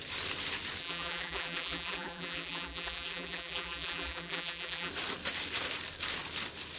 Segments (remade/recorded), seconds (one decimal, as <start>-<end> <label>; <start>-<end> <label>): 0.0-0.8 recorded; 0.8-4.9 remade; 4.9-6.8 recorded